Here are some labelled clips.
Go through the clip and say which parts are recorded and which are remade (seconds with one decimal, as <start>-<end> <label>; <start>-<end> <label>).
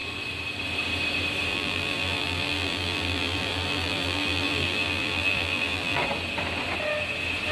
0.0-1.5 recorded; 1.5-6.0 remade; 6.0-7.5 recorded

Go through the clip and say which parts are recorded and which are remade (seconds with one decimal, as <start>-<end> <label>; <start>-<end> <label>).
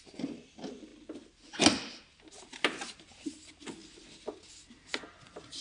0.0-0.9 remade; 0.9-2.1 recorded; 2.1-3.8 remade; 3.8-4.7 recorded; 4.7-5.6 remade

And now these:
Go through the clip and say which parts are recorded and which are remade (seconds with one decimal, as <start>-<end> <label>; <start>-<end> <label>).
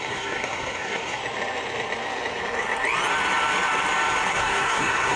0.0-1.2 remade; 1.2-4.3 recorded; 4.3-5.2 remade